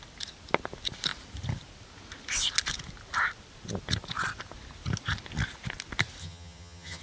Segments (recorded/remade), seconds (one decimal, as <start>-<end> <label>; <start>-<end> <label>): 0.0-6.2 recorded; 6.2-7.0 remade